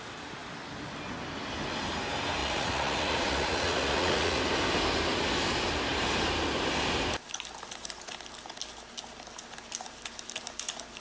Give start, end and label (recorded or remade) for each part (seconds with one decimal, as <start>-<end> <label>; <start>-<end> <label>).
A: 0.0-2.4 recorded; 2.4-4.4 remade; 4.4-11.0 recorded